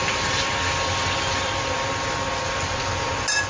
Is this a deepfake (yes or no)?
no